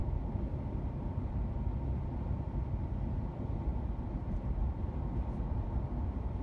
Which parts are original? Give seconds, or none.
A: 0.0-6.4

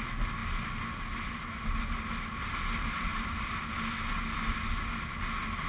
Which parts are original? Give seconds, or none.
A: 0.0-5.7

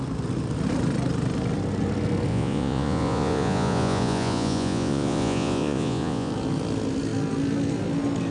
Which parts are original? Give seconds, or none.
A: 0.0-2.3; 6.3-8.3

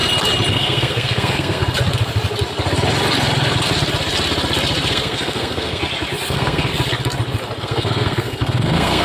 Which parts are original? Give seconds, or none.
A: 0.0-0.5; 1.6-4.9; 5.8-6.3; 6.7-7.6

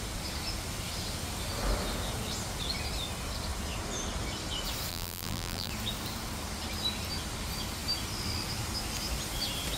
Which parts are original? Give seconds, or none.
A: 0.0-4.9; 5.7-9.8